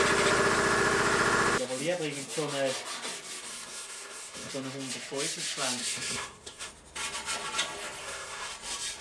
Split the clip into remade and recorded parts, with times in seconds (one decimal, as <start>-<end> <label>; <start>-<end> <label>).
0.0-3.5 recorded; 3.5-4.5 remade; 4.5-5.8 recorded; 5.8-6.7 remade; 6.7-8.0 recorded; 8.0-8.5 remade; 8.5-9.0 recorded